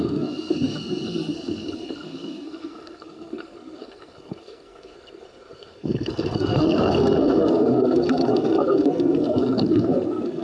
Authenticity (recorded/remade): remade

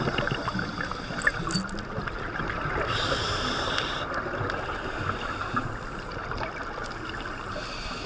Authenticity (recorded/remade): recorded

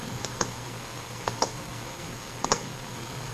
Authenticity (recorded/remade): remade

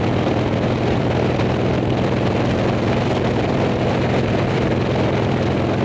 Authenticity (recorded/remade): recorded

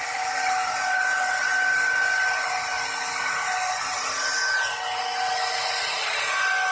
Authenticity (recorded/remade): recorded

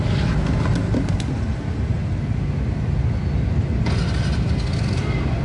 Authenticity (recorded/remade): recorded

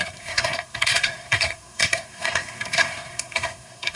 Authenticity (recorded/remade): remade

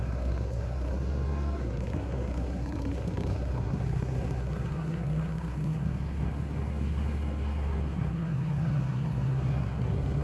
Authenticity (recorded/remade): remade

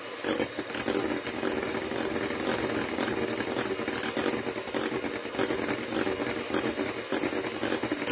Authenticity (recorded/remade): recorded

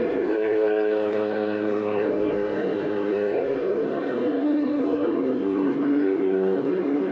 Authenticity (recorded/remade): remade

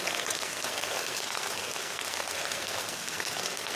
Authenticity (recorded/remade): remade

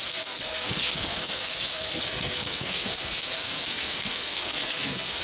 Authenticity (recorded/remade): remade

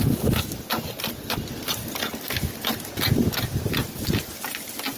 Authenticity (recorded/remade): recorded